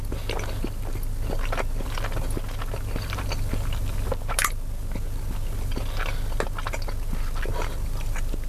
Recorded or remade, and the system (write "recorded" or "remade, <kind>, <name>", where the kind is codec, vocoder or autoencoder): recorded